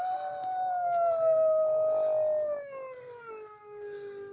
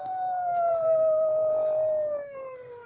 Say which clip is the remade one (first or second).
second